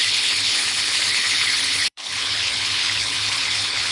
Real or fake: fake